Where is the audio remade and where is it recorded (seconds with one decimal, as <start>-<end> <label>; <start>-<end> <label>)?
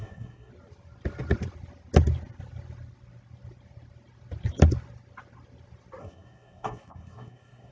0.0-0.5 remade; 0.5-6.0 recorded; 6.0-7.7 remade